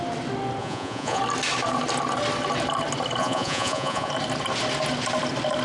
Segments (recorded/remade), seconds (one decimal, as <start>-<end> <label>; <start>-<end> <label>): 0.0-0.6 recorded; 0.6-1.2 remade; 1.2-3.2 recorded; 3.2-4.1 remade; 4.1-5.6 recorded